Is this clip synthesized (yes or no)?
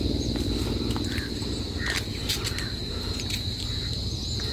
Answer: no